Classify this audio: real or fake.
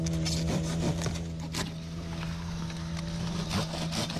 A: real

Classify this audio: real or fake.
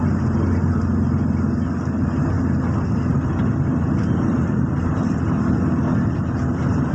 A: real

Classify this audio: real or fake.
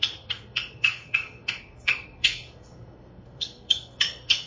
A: fake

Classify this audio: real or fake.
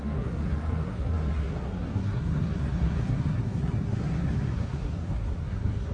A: fake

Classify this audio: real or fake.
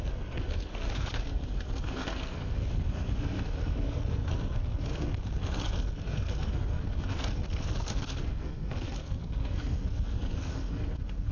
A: fake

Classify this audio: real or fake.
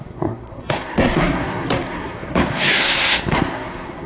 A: fake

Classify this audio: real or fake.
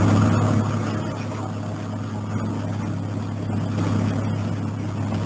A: real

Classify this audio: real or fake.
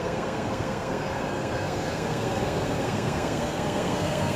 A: fake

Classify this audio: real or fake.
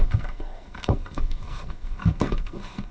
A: fake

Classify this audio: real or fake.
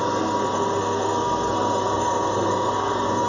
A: fake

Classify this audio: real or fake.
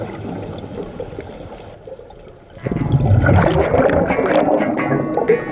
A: real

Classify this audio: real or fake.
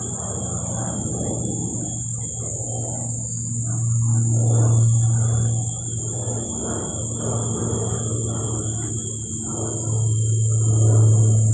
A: real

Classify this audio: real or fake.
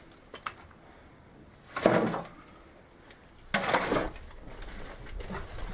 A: real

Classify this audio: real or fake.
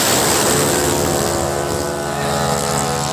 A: real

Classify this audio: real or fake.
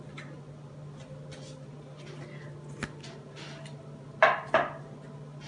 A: real